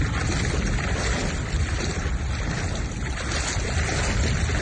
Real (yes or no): yes